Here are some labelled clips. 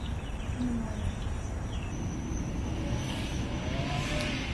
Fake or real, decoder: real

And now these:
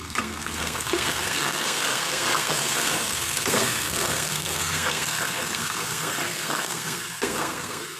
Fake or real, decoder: fake, codec, SNAC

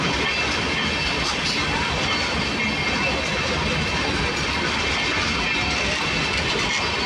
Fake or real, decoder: real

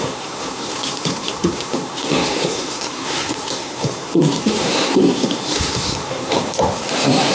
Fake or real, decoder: fake, codec, SNAC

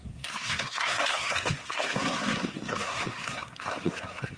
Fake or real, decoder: fake, codec, SNAC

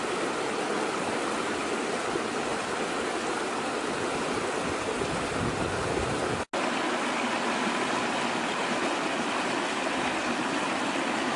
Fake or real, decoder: real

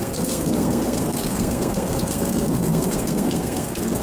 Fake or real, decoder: fake, codec, SNAC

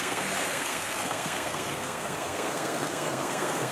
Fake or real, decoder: fake, codec, SNAC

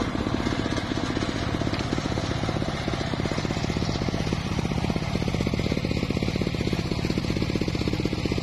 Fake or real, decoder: real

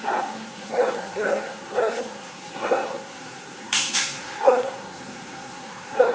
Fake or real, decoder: fake, codec, SNAC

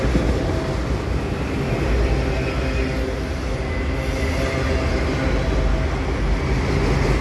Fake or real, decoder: real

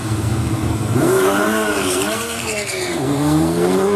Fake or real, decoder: fake, codec, SNAC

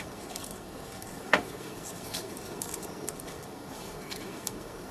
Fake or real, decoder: fake, codec, SNAC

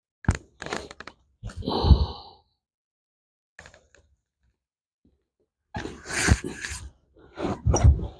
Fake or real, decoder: real